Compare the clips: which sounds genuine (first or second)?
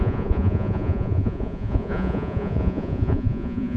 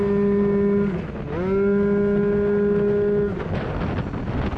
second